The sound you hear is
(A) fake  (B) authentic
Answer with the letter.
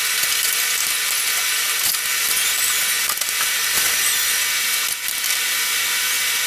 B